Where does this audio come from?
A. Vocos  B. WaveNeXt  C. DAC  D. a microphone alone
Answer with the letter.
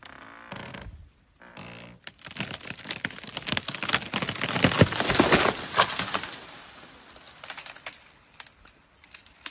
D